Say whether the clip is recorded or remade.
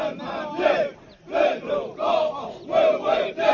recorded